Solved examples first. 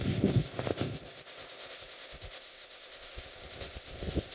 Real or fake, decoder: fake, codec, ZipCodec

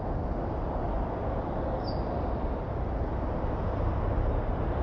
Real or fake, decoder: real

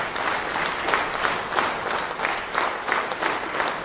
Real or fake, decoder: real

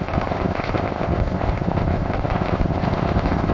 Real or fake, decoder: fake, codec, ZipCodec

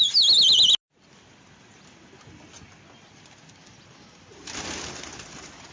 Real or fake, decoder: real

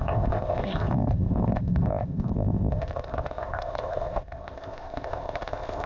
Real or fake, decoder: fake, codec, ZipCodec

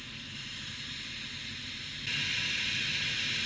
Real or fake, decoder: real